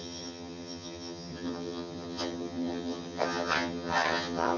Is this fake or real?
fake